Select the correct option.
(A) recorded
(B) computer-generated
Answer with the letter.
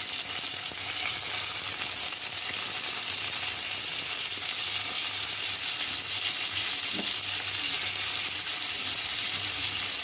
A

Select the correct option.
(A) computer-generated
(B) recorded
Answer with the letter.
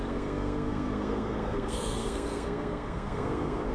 A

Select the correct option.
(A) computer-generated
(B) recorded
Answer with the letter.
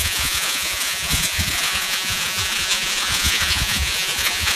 A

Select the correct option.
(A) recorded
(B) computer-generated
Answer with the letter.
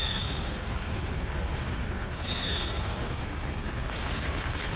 B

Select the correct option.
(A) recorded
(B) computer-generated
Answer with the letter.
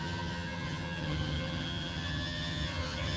B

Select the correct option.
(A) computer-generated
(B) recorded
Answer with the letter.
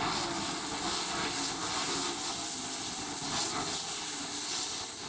B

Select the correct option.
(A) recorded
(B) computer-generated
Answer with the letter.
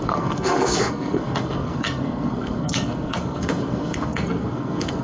B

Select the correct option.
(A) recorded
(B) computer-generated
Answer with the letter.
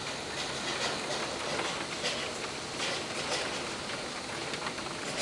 A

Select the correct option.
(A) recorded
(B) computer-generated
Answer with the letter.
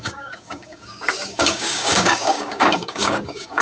B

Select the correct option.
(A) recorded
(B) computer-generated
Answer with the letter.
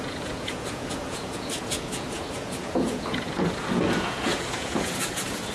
B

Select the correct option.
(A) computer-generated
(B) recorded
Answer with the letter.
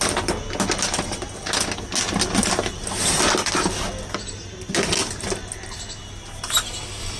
B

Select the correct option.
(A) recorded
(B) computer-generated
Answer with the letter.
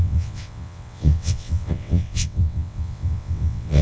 B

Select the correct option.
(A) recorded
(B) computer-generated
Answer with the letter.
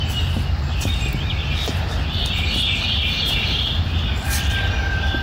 A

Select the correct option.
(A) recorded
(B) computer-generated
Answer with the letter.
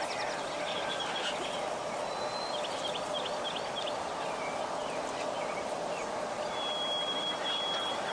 A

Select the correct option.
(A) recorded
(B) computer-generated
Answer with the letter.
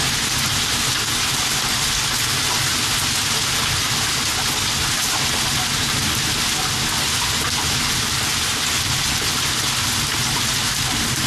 A